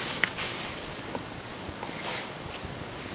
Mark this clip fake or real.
fake